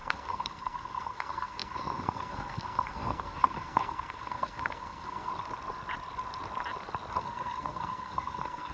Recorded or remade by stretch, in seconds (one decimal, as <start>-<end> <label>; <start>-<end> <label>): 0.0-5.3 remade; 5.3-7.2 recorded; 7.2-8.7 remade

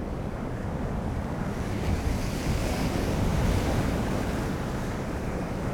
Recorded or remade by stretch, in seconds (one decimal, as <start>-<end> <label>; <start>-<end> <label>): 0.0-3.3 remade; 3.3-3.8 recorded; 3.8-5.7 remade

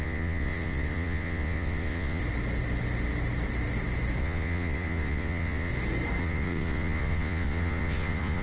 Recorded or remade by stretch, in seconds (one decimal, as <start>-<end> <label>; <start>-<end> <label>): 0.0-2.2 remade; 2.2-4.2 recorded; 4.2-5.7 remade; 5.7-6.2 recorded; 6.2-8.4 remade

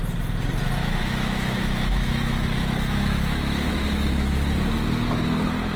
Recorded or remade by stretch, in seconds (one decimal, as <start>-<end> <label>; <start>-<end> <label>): 0.0-0.8 recorded; 0.8-4.3 remade; 4.3-5.8 recorded

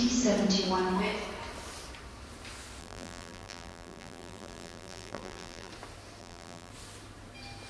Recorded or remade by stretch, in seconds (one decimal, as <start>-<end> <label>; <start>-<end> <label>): 0.0-2.8 recorded; 2.8-5.7 remade; 5.7-6.2 recorded; 6.2-6.7 remade; 6.7-7.7 recorded